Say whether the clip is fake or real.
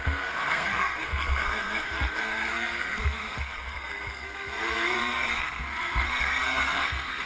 fake